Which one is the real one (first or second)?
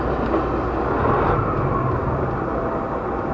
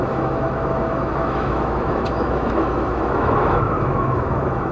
first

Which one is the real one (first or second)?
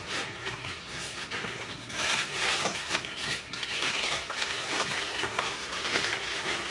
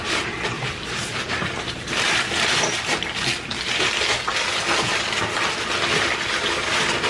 second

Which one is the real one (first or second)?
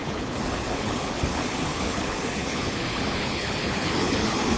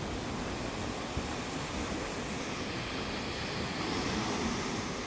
second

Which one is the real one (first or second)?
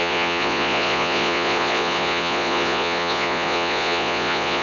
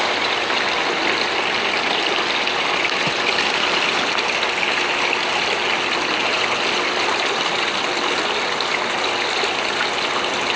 second